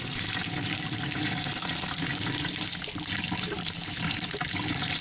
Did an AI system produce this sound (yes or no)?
no